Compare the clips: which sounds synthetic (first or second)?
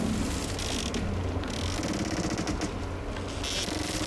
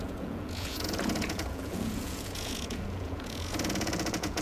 second